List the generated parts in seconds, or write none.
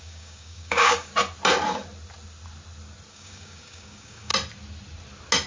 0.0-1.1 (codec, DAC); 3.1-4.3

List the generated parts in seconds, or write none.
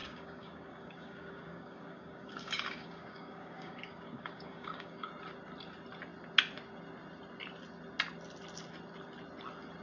0.0-5.1 (codec, DAC)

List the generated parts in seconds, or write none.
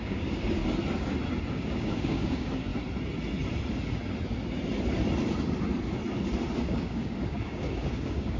0.0-0.6 (codec, DAC); 1.5-2.7; 6.6-8.4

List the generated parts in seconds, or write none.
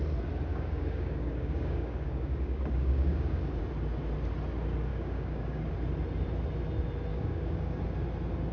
0.5-3.6 (codec, DAC); 4.9-5.7; 7.1-7.8